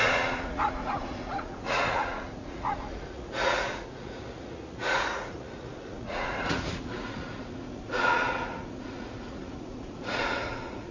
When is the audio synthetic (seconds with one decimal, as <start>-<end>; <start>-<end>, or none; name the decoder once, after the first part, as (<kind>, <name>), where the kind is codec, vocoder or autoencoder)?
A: 0.0-10.9 (vocoder, Vocos)